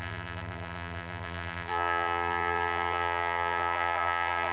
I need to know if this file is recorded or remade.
remade